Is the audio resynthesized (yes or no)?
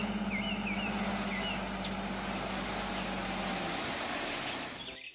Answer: no